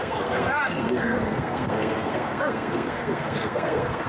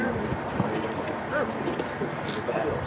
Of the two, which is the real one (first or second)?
second